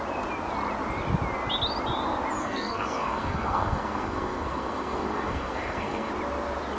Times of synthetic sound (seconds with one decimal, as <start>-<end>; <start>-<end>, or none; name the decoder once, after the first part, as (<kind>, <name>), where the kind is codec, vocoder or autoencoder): 2.4-6.1 (codec, SNAC)